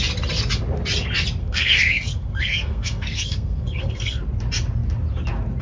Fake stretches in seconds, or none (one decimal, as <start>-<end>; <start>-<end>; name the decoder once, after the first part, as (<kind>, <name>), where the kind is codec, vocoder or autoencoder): 1.4-4.2 (codec, SNAC)